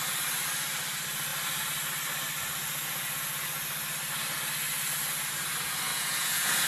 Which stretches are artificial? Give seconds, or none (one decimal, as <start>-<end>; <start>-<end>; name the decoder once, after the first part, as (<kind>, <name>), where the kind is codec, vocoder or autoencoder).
5.9-6.7 (vocoder, Vocos)